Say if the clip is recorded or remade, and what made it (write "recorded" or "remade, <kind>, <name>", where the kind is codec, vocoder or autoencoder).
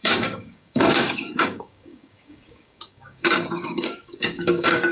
remade, codec, DAC